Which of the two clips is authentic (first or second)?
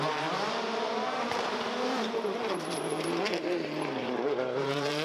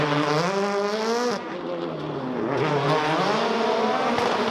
second